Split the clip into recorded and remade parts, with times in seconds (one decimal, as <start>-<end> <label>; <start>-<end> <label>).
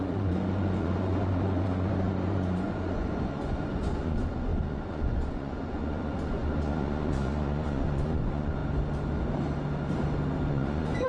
0.0-8.6 remade; 8.6-10.5 recorded; 10.5-11.1 remade